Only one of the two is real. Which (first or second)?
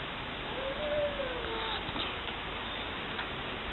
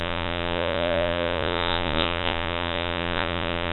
first